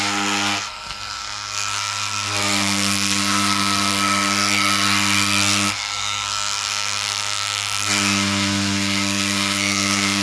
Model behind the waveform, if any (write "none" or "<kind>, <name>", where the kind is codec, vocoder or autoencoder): codec, SNAC